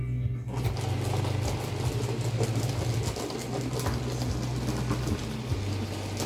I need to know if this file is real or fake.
real